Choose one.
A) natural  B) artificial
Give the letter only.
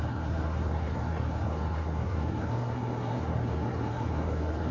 B